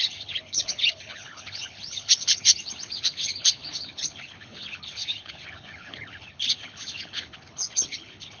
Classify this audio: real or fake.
fake